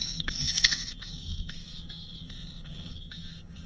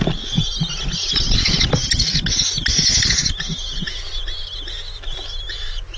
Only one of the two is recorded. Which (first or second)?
second